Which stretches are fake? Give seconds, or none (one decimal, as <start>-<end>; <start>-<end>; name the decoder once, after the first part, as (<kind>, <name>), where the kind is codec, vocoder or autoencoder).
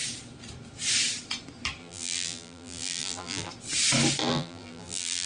1.8-3.5 (vocoder, BigVGAN v2); 4.2-5.3